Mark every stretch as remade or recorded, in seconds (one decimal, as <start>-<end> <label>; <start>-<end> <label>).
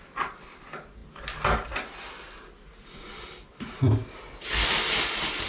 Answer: 0.0-5.5 recorded